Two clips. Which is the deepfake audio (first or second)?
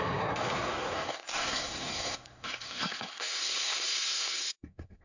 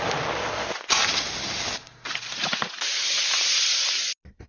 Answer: first